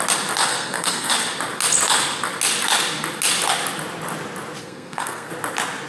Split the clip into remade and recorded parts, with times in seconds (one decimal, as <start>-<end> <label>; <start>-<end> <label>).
0.0-0.5 recorded; 0.5-1.1 remade; 1.1-4.6 recorded; 4.6-5.3 remade; 5.3-5.9 recorded